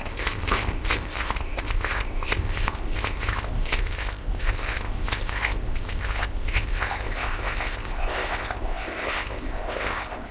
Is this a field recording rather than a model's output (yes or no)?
no